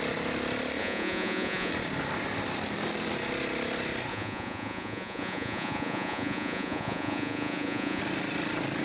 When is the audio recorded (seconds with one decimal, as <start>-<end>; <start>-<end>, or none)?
0.0-0.8; 1.7-4.1; 8.0-8.8